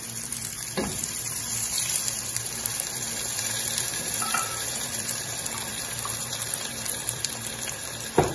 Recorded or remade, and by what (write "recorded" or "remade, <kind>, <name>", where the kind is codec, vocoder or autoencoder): remade, vocoder, BigVGAN v2